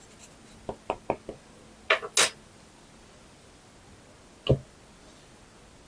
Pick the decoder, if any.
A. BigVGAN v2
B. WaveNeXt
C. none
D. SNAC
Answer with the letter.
C